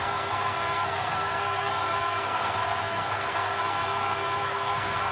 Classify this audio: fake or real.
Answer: fake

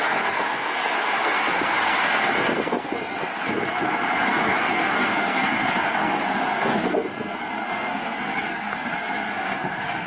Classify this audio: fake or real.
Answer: fake